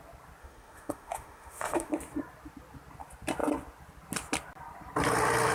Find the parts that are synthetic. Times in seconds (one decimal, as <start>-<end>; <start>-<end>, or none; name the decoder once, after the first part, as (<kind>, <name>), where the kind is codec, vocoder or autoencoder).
0.4-1.9 (autoencoder, DAC-VAE)